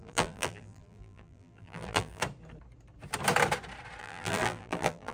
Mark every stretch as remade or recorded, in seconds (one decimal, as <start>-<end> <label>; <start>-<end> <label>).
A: 0.0-2.2 remade; 2.2-4.0 recorded; 4.0-5.1 remade